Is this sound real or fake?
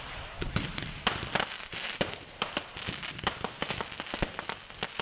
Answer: real